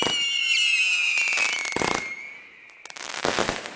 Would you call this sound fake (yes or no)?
no